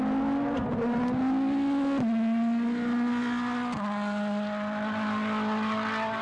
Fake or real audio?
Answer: real